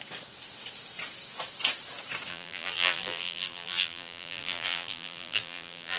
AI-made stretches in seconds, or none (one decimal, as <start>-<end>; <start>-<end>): 2.3-6.0